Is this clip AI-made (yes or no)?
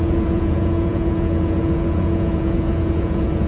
yes